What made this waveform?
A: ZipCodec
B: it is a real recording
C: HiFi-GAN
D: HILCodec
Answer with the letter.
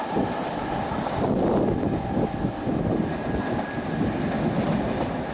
B